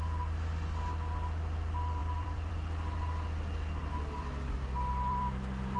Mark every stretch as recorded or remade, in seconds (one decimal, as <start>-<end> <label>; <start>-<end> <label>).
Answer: 0.0-2.0 recorded; 2.0-2.5 remade; 2.5-3.8 recorded; 3.8-5.8 remade